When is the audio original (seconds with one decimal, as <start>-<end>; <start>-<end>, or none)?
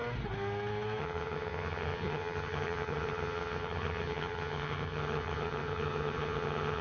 0.0-1.0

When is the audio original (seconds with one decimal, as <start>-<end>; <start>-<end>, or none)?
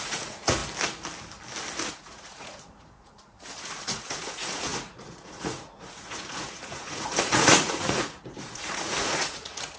0.6-1.9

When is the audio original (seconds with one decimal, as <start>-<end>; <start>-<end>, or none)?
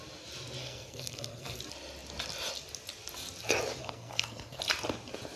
0.0-0.6; 1.6-3.8; 4.6-5.4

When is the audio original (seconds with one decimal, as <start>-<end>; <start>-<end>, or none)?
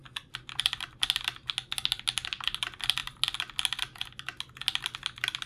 1.0-5.5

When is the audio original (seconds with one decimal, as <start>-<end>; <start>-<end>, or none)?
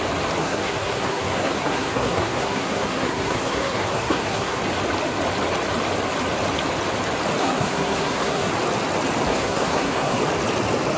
0.0-0.4; 4.6-7.4; 8.5-9.3; 10.2-11.0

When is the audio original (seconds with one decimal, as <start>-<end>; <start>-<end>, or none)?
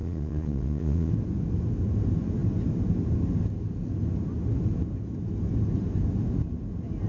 1.1-7.1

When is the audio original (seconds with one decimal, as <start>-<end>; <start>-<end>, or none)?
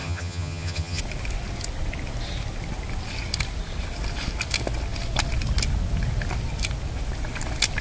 1.0-7.8